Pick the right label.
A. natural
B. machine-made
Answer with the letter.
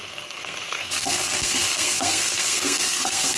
B